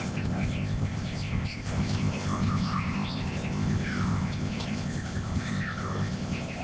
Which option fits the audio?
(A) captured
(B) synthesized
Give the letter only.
B